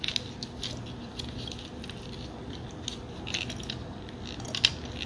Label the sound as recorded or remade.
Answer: recorded